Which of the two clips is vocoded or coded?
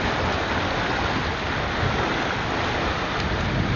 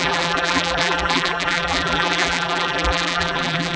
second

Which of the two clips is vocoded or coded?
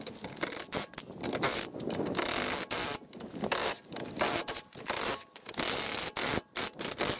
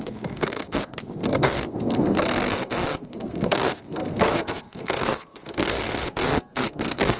second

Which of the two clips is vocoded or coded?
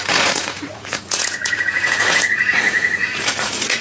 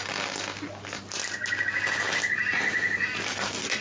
first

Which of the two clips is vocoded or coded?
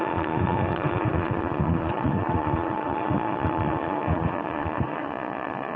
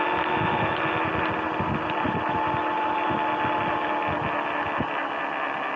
first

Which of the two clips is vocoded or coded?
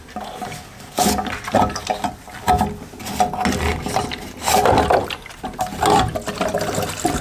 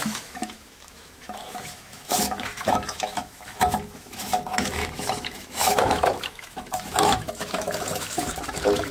second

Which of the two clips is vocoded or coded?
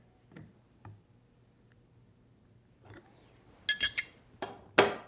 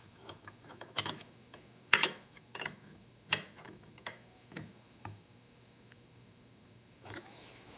second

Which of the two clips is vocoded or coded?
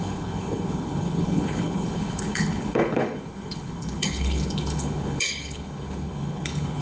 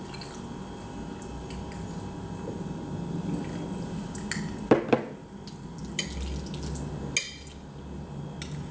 first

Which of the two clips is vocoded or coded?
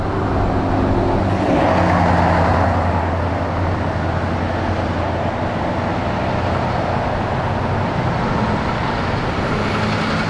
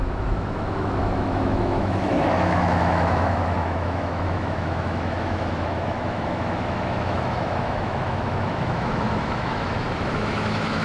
second